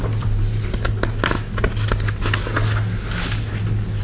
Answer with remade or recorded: recorded